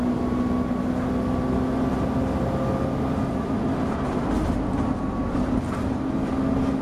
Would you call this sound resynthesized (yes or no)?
no